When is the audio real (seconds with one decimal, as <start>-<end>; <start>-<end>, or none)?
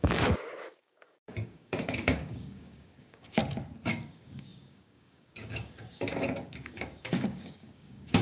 3.4-3.9